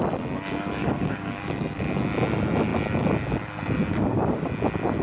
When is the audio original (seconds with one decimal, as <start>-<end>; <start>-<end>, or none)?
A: 0.0-0.8; 1.4-3.9; 4.5-5.0